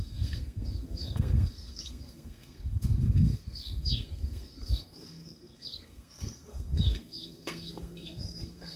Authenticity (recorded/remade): remade